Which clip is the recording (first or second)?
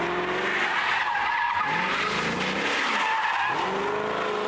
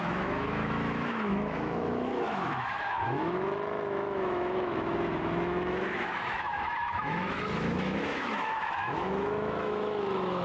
first